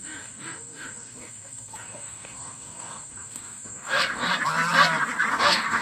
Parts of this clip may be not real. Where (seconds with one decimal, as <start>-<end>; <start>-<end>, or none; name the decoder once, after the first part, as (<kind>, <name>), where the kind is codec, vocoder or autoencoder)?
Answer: 0.0-4.3 (codec, DAC); 5.3-5.8